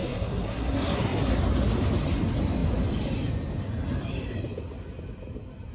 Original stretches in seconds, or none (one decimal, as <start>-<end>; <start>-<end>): 1.3-5.7